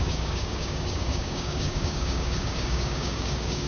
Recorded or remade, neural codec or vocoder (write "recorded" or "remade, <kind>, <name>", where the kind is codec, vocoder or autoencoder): remade, codec, DAC